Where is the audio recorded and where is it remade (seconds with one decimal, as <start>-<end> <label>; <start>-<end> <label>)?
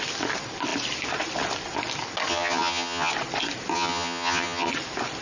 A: 0.0-2.3 recorded; 2.3-3.1 remade; 3.1-3.7 recorded; 3.7-4.7 remade; 4.7-5.2 recorded